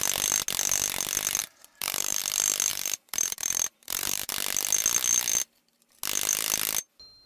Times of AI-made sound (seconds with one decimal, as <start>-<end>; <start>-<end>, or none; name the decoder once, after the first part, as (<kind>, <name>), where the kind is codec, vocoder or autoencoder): 1.4-2.2 (vocoder, BigVGAN v2); 2.7-4.3

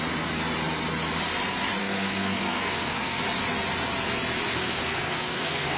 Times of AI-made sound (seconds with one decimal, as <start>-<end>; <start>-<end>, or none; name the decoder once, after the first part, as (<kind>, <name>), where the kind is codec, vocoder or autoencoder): 1.8-3.2 (codec, SNAC); 4.5-5.8

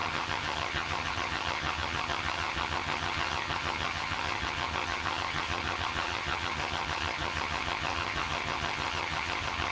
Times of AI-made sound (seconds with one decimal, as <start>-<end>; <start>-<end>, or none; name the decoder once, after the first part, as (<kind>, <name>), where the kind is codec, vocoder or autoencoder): 0.0-9.7 (vocoder, HiFi-GAN)

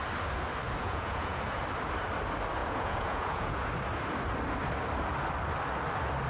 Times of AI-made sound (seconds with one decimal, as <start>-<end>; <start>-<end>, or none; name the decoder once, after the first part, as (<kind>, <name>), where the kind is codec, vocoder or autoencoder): 0.8-1.6 (vocoder, Vocos); 2.6-3.7

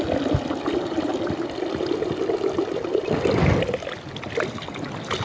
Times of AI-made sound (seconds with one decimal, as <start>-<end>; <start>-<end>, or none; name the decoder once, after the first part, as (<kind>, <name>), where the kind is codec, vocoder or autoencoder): none

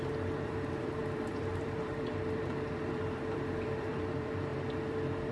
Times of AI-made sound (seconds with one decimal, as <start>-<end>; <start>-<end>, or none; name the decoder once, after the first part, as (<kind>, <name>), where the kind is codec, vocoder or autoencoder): 0.0-5.3 (vocoder, BigVGAN v2)

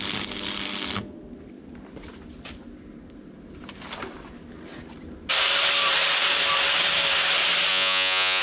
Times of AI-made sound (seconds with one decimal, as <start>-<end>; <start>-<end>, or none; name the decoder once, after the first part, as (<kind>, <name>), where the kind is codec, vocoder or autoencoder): 7.7-8.4 (vocoder, Vocos)